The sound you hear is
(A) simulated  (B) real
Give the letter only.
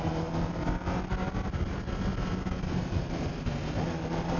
B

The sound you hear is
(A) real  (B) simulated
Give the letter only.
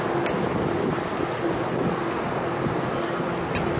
A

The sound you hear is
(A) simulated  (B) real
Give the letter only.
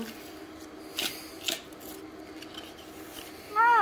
B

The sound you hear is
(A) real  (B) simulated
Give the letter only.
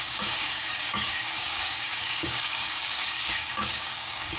B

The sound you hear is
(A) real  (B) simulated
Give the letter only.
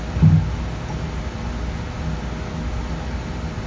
A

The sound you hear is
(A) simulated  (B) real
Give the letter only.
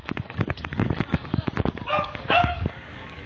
A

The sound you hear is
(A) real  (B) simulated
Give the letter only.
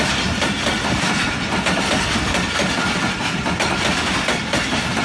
A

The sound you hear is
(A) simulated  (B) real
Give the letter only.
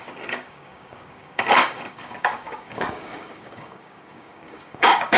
A